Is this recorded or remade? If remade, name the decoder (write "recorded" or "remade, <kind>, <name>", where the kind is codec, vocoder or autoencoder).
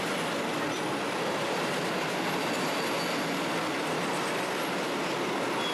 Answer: recorded